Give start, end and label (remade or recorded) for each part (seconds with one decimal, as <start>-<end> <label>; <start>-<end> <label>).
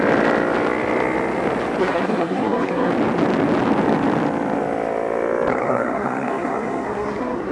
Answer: 0.0-1.8 recorded; 1.8-2.9 remade; 2.9-5.5 recorded; 5.5-7.5 remade